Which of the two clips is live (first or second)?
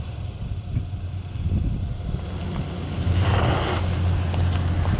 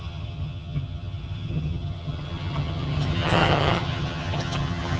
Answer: first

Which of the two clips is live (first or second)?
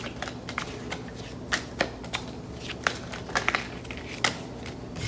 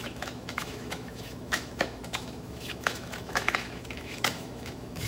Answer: first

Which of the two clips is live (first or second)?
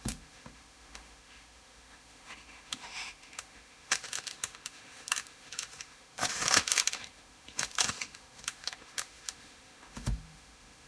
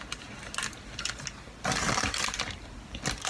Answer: second